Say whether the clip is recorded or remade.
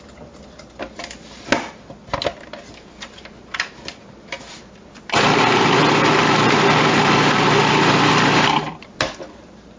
recorded